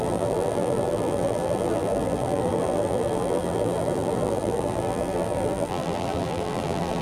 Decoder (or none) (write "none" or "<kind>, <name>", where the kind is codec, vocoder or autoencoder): vocoder, BigVGAN v2